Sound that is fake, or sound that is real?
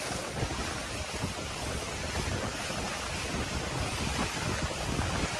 real